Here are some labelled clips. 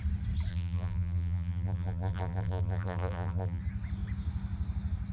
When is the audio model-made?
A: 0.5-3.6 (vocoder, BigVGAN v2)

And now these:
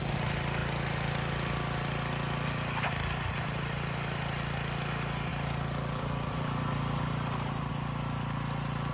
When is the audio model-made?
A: 5.3-7.7 (vocoder, BigVGAN v2)

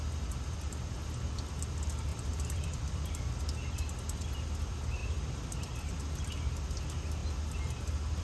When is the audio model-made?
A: 2.1-3.1 (vocoder, BigVGAN v2); 5.0-6.2

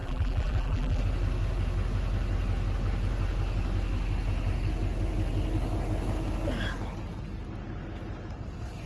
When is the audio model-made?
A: 0.0-1.0 (vocoder, BigVGAN v2)

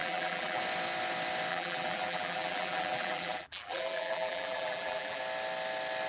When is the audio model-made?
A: 0.0-0.6 (vocoder, BigVGAN v2); 1.5-5.2

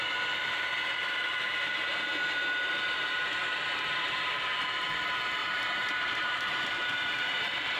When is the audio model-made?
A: 3.4-4.3 (vocoder, BigVGAN v2); 5.4-7.8